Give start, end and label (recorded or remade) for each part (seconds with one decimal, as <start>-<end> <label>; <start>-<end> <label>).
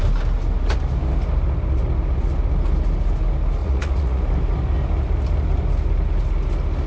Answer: 0.0-3.6 recorded; 3.6-4.2 remade; 4.2-6.9 recorded